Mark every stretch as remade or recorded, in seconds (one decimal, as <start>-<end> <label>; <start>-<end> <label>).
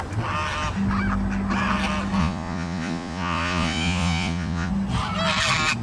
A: 0.0-2.2 recorded; 2.2-4.7 remade; 4.7-5.8 recorded